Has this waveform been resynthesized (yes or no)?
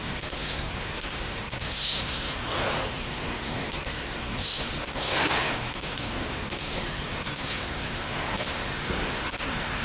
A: yes